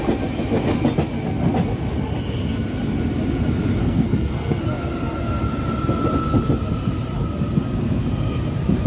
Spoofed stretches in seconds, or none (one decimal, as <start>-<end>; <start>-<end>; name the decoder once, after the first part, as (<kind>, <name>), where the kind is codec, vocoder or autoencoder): 3.8-4.7 (codec, SNAC)